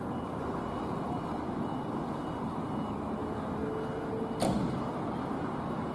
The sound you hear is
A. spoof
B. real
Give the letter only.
B